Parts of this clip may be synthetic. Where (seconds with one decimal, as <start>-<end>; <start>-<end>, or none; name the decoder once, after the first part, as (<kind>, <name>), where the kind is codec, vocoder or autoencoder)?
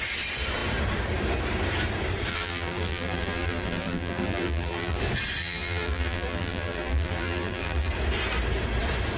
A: 2.3-5.0 (vocoder, BigVGAN v2); 5.4-7.9